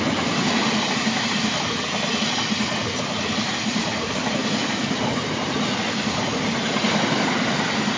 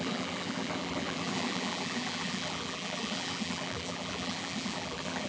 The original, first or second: first